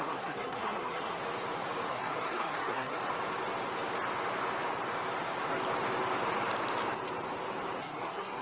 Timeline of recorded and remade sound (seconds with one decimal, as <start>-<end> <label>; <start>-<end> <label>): 0.0-1.2 remade; 1.2-1.9 recorded; 1.9-3.0 remade; 3.0-7.8 recorded; 7.8-8.4 remade